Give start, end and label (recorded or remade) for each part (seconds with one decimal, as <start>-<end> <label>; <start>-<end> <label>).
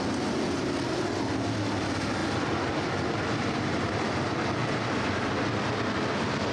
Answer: 0.0-2.2 recorded; 2.2-5.1 remade; 5.1-6.5 recorded